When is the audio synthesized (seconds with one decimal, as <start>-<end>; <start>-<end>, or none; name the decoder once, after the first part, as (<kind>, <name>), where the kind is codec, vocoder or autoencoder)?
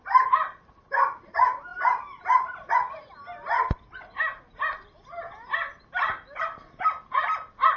none